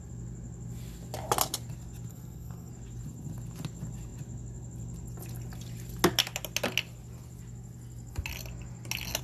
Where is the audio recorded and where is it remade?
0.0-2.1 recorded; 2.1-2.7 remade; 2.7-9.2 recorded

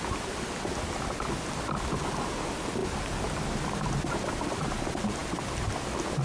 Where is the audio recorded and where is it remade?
0.0-6.2 recorded

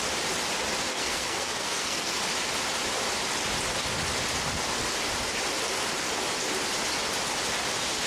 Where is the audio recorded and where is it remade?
0.0-0.9 recorded; 0.9-2.2 remade; 2.2-8.1 recorded

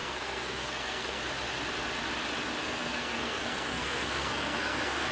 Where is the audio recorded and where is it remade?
0.0-1.2 remade; 1.2-2.6 recorded; 2.6-5.1 remade

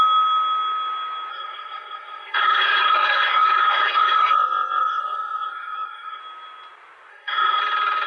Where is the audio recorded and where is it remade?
0.0-1.3 recorded; 1.3-6.2 remade; 6.2-7.1 recorded; 7.1-7.6 remade; 7.6-8.1 recorded